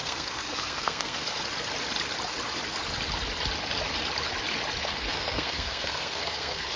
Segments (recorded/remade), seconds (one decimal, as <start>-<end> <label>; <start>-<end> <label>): 0.0-1.4 remade; 1.4-4.8 recorded; 4.8-6.8 remade